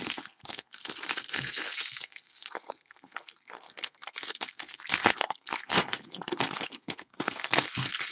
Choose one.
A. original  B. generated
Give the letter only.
B